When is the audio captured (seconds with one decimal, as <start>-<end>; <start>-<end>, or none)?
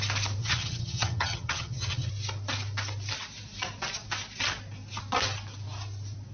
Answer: 0.0-0.4; 2.1-6.3